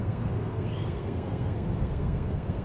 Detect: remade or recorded remade